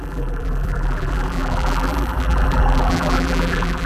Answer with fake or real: fake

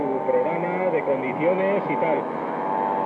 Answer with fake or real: real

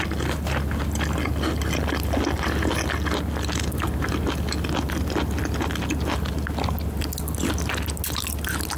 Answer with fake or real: real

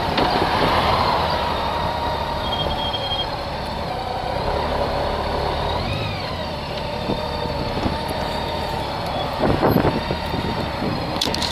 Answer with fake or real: fake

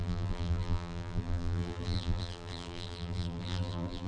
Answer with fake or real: fake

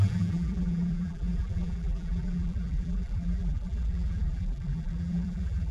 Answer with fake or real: fake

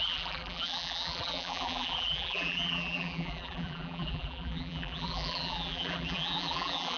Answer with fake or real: fake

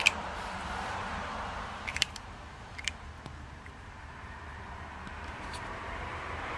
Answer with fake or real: fake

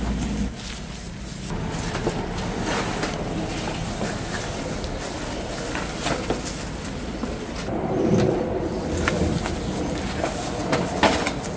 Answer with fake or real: real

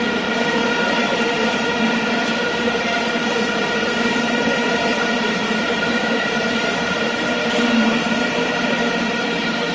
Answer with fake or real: fake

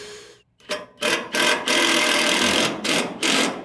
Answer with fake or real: fake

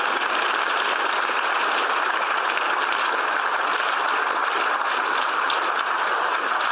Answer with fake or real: fake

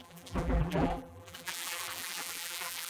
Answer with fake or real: fake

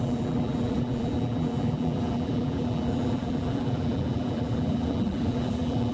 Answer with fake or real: fake